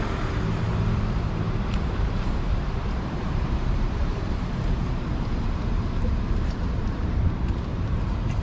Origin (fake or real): fake